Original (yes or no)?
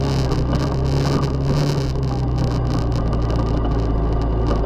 yes